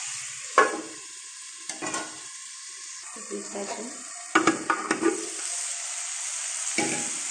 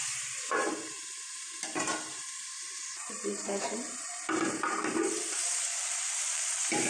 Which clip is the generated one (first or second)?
second